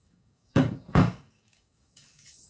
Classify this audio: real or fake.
fake